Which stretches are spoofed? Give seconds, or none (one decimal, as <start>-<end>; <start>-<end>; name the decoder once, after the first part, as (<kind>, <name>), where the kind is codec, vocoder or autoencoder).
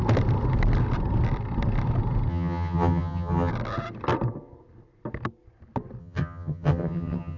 2.3-3.5 (vocoder, HiFi-GAN); 6.0-7.4